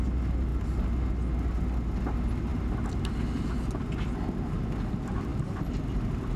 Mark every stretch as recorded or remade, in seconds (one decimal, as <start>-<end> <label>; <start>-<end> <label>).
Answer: 0.0-6.4 recorded